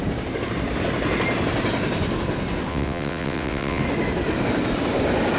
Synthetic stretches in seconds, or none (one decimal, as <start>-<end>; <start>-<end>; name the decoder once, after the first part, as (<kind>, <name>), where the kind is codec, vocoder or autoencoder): 2.7-3.8 (vocoder, WaveNeXt)